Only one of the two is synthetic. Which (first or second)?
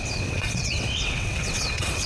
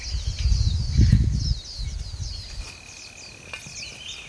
first